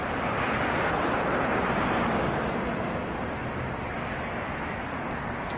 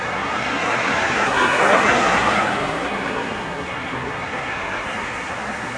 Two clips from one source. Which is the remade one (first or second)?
second